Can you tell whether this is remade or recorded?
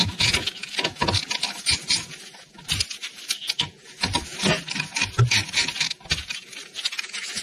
recorded